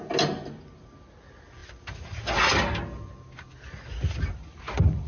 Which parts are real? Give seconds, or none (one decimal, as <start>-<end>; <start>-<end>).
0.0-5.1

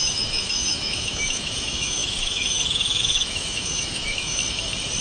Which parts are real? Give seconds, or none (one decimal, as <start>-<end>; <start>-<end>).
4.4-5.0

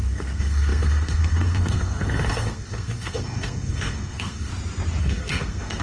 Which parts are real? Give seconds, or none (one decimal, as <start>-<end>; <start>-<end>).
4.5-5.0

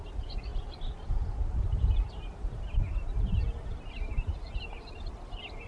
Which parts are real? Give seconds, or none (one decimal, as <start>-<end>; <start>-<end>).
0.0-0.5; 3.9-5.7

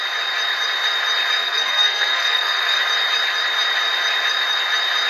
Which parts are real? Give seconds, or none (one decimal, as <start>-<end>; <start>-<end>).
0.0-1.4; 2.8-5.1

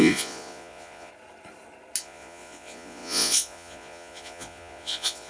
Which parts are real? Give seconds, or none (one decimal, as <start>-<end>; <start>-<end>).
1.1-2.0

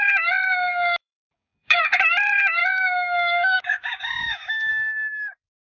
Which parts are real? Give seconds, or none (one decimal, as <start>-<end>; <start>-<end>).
0.0-1.0; 1.8-2.6; 4.7-5.6